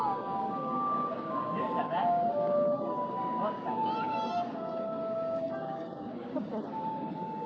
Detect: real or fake fake